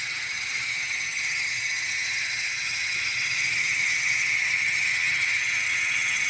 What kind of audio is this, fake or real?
fake